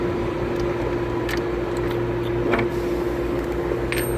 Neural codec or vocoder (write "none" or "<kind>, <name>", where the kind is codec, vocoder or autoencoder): none